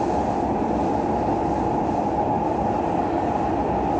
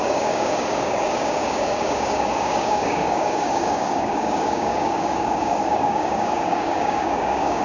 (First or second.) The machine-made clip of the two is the second